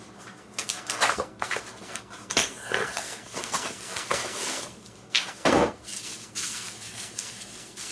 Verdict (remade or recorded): remade